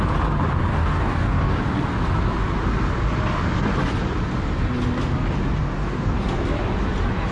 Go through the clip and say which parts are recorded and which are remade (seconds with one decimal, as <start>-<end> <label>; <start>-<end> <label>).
0.0-0.7 recorded; 0.7-1.6 remade; 1.6-5.6 recorded; 5.6-6.2 remade; 6.2-7.3 recorded